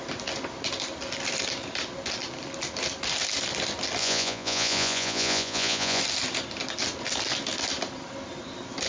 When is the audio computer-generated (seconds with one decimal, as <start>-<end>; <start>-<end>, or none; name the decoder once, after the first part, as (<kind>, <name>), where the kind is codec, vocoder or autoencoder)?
4.0-6.0 (vocoder, Vocos)